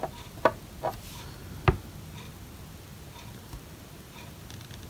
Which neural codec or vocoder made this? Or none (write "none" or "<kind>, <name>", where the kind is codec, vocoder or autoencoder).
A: none